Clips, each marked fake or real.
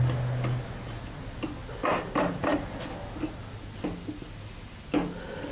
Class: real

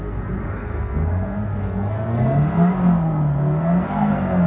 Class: fake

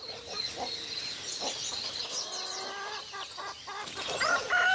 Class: real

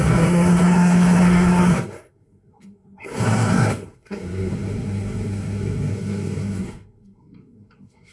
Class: fake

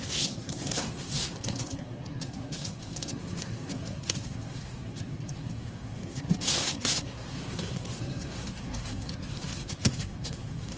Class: fake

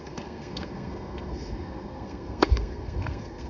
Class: fake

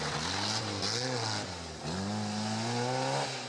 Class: real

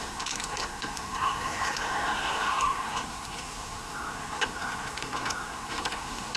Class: fake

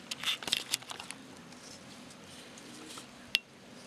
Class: real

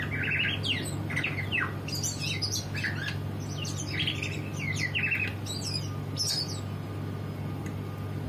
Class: real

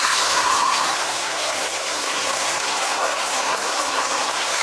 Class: fake